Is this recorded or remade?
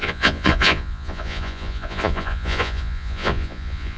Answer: remade